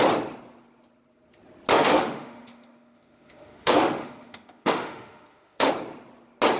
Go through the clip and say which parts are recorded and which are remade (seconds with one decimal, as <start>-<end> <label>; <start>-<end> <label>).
0.0-1.7 recorded; 1.7-5.7 remade; 5.7-6.6 recorded